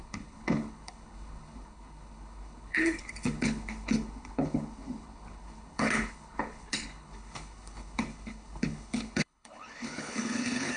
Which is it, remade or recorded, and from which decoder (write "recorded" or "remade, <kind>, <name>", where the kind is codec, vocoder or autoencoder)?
remade, codec, HILCodec